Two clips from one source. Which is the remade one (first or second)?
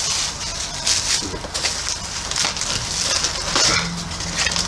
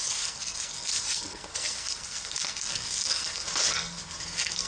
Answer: second